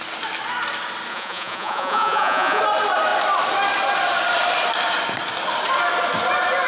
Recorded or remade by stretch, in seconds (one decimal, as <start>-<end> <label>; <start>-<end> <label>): 0.0-1.1 recorded; 1.1-2.6 remade; 2.6-6.7 recorded